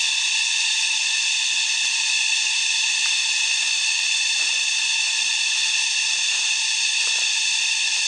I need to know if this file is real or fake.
fake